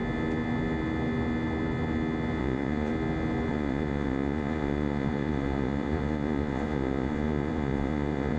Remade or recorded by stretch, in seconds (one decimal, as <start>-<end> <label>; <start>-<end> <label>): 0.0-2.4 recorded; 2.4-2.9 remade; 2.9-3.5 recorded; 3.5-8.4 remade